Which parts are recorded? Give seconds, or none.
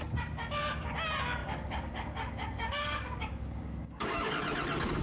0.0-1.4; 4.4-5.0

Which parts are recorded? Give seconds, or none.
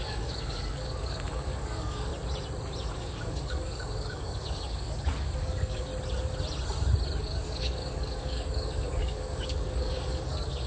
2.1-2.9; 5.9-7.2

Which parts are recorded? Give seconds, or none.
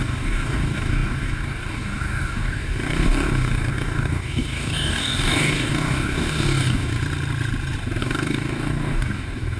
6.9-8.0